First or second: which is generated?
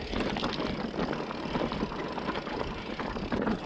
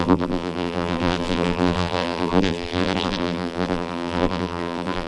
second